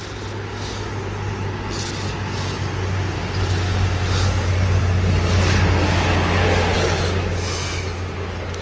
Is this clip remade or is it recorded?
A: recorded